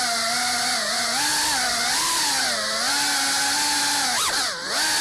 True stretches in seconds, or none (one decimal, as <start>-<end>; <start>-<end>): 0.0-5.0